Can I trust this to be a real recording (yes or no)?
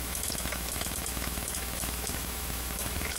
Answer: no